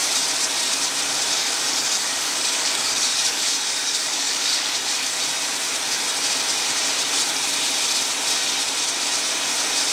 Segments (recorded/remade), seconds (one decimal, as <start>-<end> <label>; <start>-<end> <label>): 0.0-1.4 recorded; 1.4-5.2 remade; 5.2-9.9 recorded